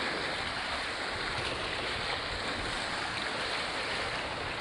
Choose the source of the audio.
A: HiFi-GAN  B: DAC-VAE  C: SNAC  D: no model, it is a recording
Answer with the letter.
D